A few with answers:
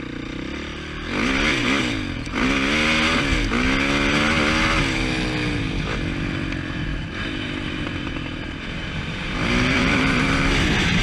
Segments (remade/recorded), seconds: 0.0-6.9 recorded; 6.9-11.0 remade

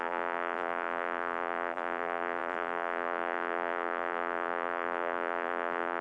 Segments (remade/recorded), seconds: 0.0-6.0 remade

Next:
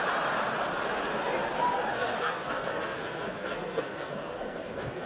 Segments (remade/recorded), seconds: 0.0-1.9 recorded; 1.9-5.1 remade

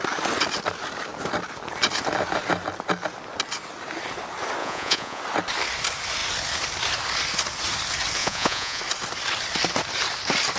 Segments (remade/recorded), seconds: 0.0-4.6 recorded; 4.6-5.2 remade; 5.2-8.2 recorded; 8.2-8.8 remade; 8.8-10.6 recorded

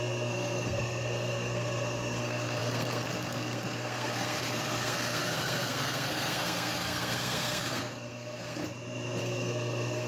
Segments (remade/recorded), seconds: 0.0-8.6 remade; 8.6-9.2 recorded; 9.2-10.1 remade